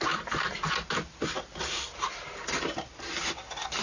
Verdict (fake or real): real